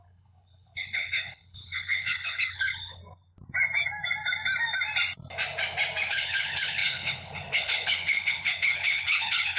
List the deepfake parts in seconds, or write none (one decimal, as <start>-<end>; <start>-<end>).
0.0-3.0; 6.1-9.6